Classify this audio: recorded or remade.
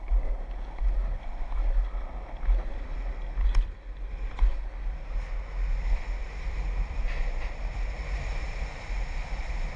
recorded